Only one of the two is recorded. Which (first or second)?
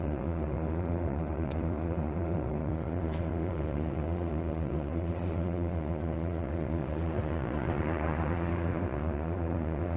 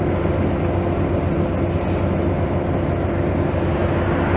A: second